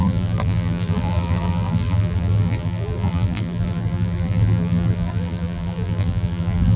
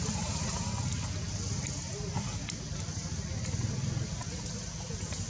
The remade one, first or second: first